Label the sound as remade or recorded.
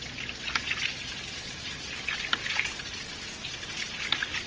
recorded